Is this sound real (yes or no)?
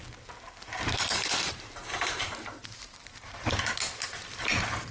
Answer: no